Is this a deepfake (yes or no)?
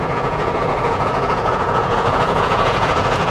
yes